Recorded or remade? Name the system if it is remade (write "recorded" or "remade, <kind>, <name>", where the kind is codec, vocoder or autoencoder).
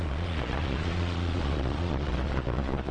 remade, vocoder, Vocos